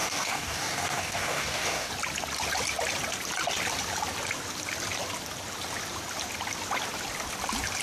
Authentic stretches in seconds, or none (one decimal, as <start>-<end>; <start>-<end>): 1.9-7.8